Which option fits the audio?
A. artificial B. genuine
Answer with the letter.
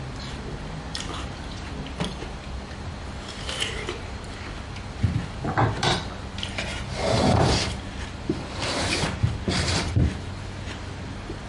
A